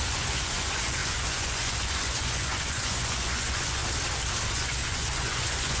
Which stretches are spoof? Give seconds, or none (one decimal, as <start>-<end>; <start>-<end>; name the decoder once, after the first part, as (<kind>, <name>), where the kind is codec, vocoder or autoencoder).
0.0-3.8 (vocoder, Vocos); 4.5-5.8